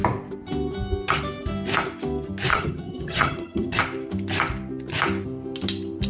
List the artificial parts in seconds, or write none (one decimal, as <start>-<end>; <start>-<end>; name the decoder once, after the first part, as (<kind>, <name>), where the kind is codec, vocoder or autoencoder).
2.5-3.8 (vocoder, HiFi-GAN)